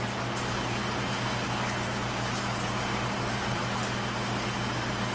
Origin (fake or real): real